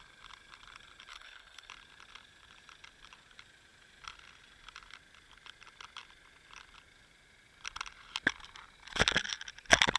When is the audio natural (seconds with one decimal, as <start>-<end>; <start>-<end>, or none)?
0.0-1.1; 1.7-10.0

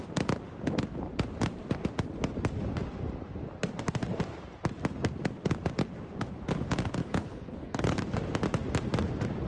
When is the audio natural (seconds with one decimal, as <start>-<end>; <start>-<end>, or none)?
0.0-7.0; 8.0-9.5

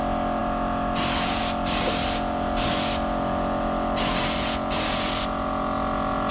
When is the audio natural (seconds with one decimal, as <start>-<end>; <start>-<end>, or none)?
0.0-6.3

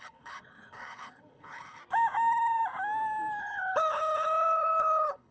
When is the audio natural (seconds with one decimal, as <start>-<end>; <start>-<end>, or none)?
1.8-3.4

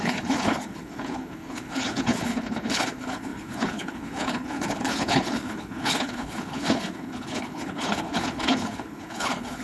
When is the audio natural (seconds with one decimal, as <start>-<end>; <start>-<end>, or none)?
none

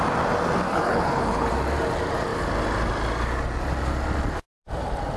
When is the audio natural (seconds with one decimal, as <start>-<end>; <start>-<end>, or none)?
0.0-0.7; 1.5-5.2

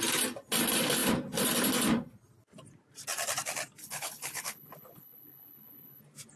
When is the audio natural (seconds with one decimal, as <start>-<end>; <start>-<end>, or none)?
0.0-3.8; 6.0-6.4

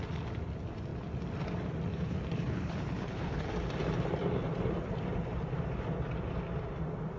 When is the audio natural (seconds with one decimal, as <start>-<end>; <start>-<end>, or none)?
0.0-1.9; 3.5-7.2